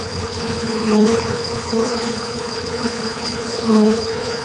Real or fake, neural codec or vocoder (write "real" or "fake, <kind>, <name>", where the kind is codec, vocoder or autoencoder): fake, codec, HILCodec